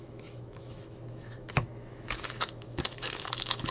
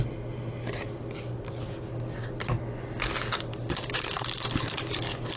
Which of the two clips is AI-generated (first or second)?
first